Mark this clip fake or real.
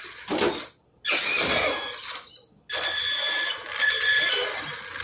real